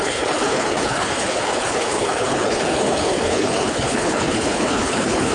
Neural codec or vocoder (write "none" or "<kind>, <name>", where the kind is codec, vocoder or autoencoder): codec, HILCodec